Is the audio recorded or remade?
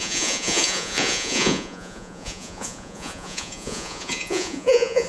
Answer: remade